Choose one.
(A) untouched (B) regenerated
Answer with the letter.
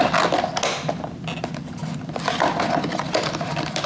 A